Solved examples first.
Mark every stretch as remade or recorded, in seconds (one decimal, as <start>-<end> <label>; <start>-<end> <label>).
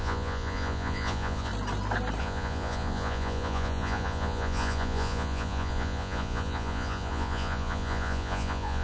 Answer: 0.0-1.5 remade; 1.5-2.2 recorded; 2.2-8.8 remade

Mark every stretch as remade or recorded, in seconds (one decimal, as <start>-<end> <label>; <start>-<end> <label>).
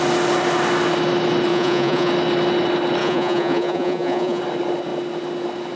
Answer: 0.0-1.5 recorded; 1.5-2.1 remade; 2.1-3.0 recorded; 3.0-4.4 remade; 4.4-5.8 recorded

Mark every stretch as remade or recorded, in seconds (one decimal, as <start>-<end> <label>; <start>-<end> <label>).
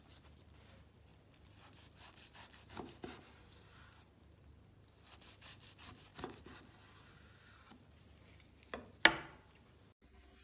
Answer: 0.0-10.4 recorded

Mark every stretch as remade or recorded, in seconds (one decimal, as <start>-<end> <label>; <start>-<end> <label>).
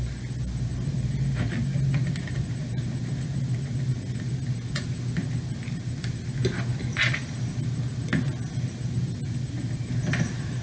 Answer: 0.0-10.6 recorded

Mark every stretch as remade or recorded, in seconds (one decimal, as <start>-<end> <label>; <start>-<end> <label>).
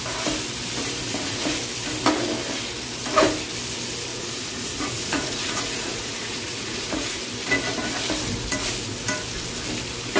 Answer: 0.0-1.1 recorded; 1.1-1.6 remade; 1.6-4.1 recorded; 4.1-7.2 remade; 7.2-10.2 recorded